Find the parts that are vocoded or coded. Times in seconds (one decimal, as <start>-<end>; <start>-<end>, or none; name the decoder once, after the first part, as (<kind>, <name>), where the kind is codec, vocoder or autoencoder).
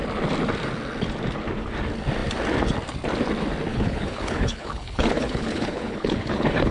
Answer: 3.7-6.7 (codec, HILCodec)